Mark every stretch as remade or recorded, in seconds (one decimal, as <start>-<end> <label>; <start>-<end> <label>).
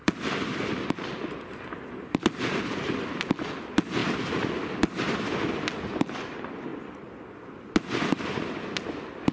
0.0-9.3 recorded